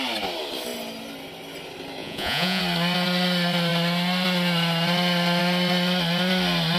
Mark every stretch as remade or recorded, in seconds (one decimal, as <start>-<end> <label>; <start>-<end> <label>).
0.0-2.0 recorded; 2.0-2.6 remade; 2.6-6.8 recorded